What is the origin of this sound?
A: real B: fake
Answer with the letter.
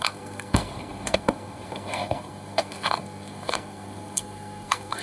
B